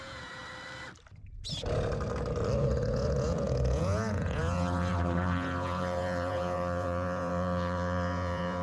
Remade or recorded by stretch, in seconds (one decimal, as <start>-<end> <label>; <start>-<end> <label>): 0.0-0.4 remade; 0.4-2.6 recorded; 2.6-8.6 remade